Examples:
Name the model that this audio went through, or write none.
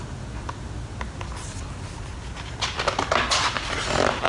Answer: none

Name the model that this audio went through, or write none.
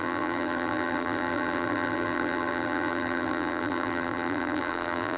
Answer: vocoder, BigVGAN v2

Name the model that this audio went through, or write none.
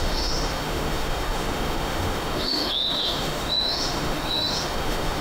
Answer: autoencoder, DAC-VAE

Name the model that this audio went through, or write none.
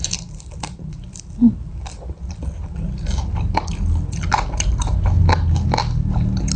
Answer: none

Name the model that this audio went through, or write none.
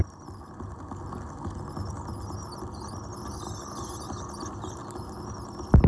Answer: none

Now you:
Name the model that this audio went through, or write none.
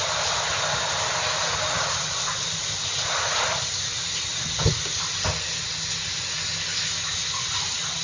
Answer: none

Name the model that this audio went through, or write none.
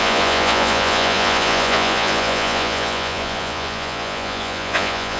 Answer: vocoder, Vocos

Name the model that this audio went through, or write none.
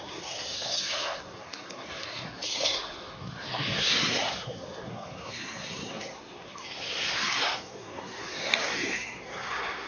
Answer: codec, SNAC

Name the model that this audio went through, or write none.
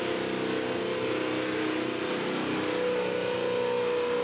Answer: none